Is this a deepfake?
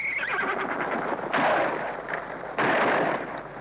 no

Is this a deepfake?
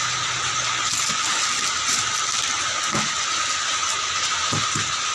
no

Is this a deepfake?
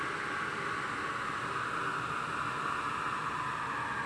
no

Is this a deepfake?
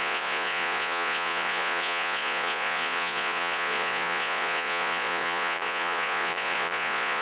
yes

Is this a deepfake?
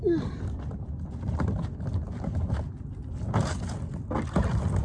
no